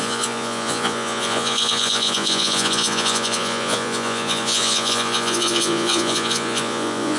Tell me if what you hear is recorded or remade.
remade